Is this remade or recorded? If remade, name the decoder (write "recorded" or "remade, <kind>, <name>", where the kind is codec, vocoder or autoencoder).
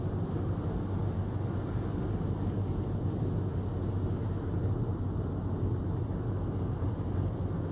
recorded